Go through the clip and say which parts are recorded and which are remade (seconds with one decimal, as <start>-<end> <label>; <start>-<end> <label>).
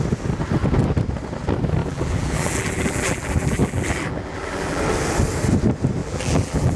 0.0-1.8 recorded; 1.8-4.8 remade; 4.8-6.0 recorded; 6.0-6.8 remade